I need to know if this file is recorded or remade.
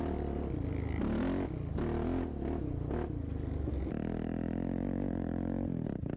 recorded